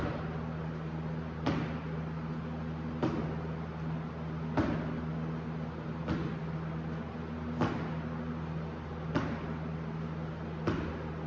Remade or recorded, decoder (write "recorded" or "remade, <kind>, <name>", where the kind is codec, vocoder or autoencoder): recorded